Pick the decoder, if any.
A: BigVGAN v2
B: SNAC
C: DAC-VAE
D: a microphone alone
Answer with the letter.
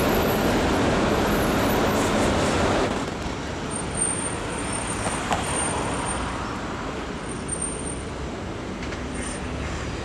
D